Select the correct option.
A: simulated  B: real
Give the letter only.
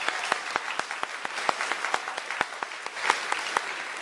B